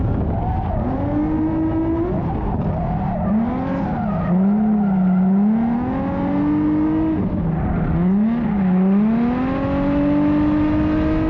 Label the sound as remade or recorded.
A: recorded